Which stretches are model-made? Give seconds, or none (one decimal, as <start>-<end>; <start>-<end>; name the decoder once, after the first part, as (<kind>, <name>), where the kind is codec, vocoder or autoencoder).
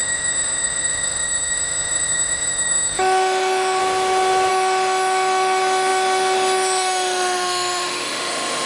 0.0-3.8 (autoencoder, DAC-VAE); 4.5-8.7